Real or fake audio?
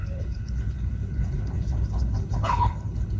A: fake